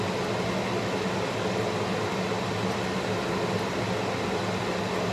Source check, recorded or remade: recorded